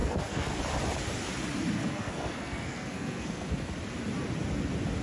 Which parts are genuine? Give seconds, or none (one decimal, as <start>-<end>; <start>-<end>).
0.6-1.8; 3.7-5.0

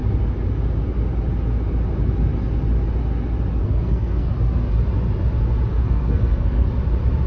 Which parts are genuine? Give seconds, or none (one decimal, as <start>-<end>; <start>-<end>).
0.0-3.6; 4.3-5.7; 6.7-7.3

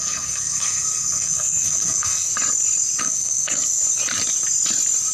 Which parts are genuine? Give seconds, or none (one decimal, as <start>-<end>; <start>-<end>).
2.3-3.0; 3.8-5.1